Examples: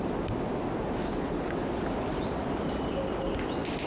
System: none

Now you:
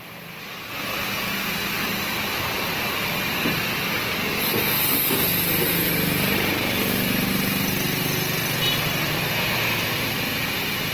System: none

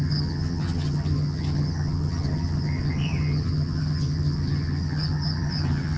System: vocoder, HiFi-GAN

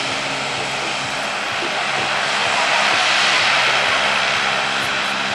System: none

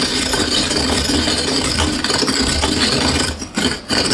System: none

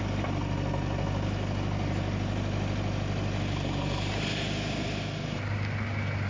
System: none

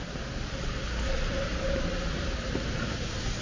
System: none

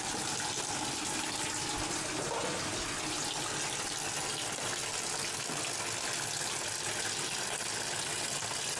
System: none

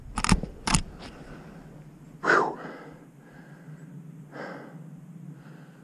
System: none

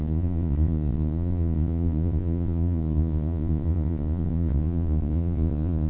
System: vocoder, Vocos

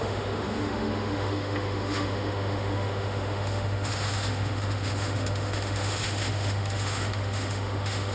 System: autoencoder, DAC-VAE